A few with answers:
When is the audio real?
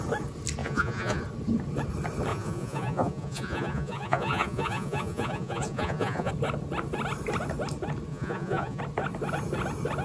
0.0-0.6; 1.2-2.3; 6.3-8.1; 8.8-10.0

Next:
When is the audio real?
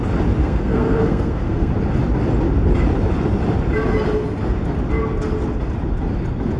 0.0-0.4; 1.7-6.6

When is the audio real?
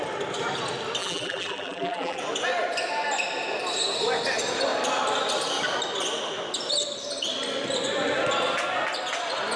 0.0-1.0; 2.2-9.6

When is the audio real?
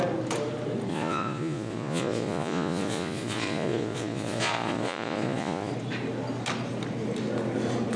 0.0-0.9; 5.7-8.0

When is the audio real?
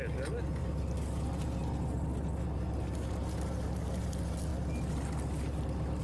0.0-6.0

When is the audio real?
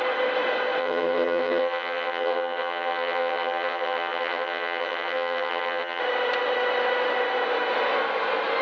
0.0-0.8; 6.0-8.6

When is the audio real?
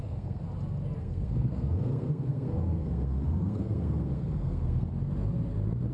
0.4-1.0; 4.9-5.9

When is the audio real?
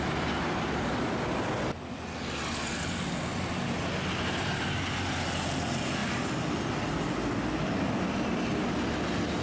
0.0-9.4